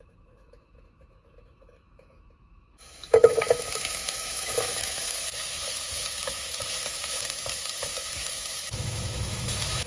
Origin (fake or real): fake